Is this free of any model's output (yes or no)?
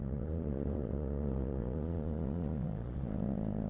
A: no